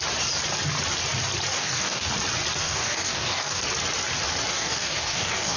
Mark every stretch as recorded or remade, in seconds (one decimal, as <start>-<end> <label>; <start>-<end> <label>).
0.0-1.5 recorded; 1.5-2.1 remade; 2.1-2.6 recorded; 2.6-3.6 remade; 3.6-4.5 recorded; 4.5-5.6 remade